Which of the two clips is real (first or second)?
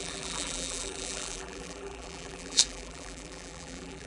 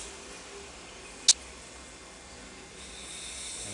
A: second